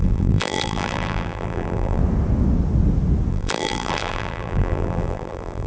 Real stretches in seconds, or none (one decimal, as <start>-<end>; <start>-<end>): 2.0-3.3